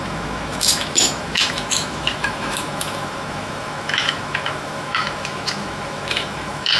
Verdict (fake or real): fake